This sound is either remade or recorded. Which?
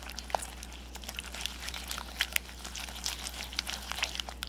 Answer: recorded